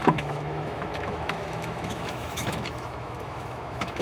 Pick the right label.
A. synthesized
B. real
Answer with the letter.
A